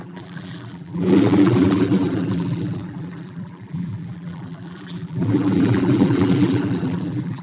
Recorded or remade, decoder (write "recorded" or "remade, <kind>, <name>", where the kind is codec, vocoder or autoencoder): remade, vocoder, BigVGAN v2